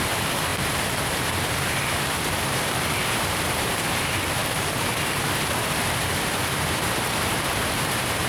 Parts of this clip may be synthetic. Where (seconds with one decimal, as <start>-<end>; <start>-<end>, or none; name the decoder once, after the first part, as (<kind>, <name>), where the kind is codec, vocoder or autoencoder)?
0.0-8.3 (vocoder, BigVGAN v2)

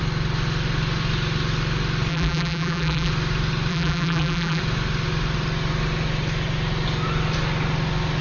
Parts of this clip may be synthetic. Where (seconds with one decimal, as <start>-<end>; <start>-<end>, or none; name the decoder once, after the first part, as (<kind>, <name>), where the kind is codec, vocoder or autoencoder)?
2.1-3.1 (vocoder, BigVGAN v2); 3.7-4.6

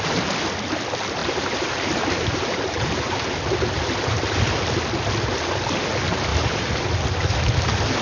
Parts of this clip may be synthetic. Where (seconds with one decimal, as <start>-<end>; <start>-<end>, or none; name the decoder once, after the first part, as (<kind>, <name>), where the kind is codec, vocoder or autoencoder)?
1.2-3.4 (vocoder, BigVGAN v2); 6.3-6.8